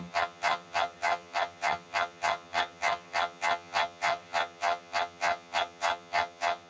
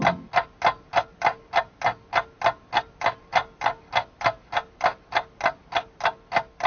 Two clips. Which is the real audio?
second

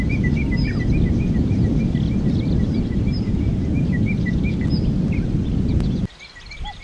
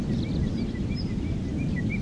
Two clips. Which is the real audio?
second